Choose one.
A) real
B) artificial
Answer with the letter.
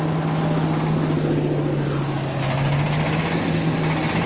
A